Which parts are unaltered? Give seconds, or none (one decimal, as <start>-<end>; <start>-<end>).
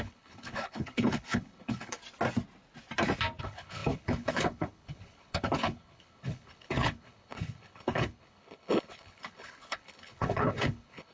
2.0-3.4